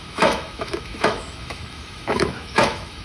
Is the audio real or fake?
fake